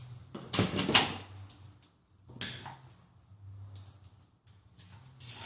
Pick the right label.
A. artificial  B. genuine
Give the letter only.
B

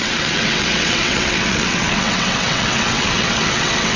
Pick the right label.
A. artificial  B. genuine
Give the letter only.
A